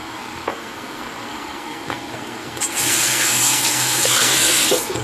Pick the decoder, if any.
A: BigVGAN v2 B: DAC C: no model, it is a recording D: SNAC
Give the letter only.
D